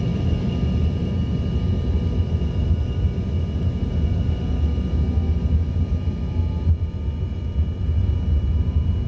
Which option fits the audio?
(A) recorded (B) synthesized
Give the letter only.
A